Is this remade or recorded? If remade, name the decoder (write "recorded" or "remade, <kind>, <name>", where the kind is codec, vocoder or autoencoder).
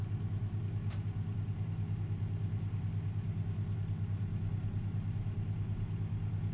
recorded